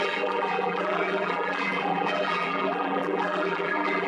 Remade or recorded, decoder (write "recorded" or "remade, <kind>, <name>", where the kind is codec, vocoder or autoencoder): remade, vocoder, BigVGAN v2